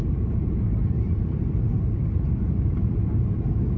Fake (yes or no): yes